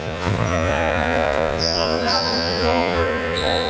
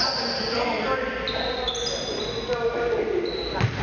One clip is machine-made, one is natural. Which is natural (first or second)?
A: second